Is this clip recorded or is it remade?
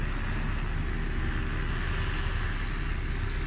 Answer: recorded